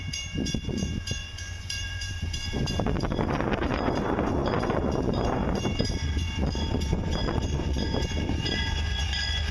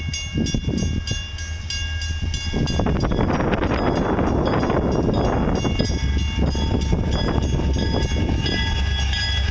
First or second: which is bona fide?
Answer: second